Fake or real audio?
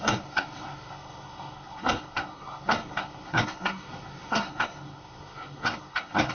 fake